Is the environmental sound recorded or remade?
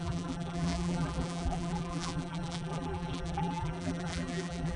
remade